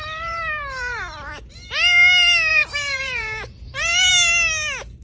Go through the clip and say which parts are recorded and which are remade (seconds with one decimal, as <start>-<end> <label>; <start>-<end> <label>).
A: 0.0-1.5 remade; 1.5-2.5 recorded; 2.5-4.1 remade; 4.1-5.0 recorded